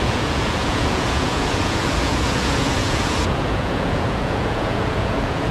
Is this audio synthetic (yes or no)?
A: yes